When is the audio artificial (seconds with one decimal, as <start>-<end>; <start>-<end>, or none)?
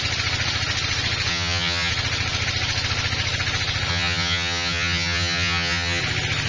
1.3-1.9; 3.9-6.0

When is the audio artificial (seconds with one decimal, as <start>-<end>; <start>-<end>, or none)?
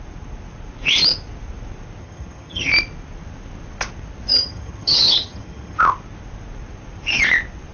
2.0-2.7; 4.3-5.8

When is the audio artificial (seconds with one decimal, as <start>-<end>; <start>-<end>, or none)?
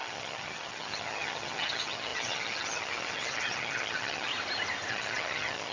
0.0-4.3; 4.9-5.7